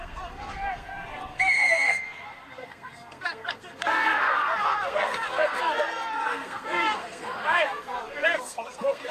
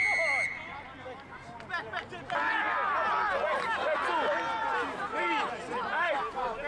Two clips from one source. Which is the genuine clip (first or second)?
second